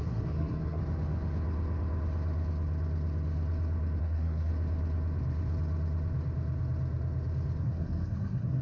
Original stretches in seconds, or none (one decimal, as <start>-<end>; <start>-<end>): 0.8-4.0; 4.5-7.6